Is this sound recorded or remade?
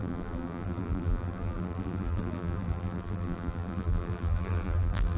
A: remade